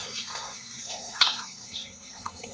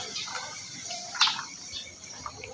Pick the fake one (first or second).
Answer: first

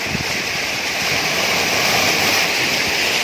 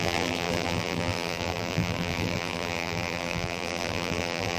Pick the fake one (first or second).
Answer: second